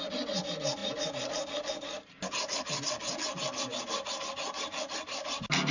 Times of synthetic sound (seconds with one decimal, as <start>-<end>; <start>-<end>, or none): none